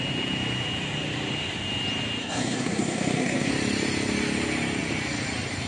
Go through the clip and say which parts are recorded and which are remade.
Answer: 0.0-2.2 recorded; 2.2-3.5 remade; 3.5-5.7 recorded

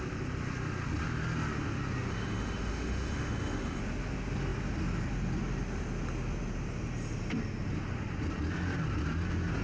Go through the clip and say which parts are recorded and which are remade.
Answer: 0.0-2.1 recorded; 2.1-3.8 remade; 3.8-9.6 recorded

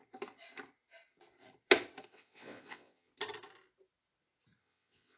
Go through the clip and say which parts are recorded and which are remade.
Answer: 0.0-2.1 recorded; 2.1-3.1 remade; 3.1-4.6 recorded; 4.6-5.2 remade

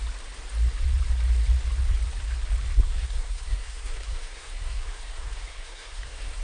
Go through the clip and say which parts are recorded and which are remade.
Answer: 0.0-2.7 recorded; 2.7-6.4 remade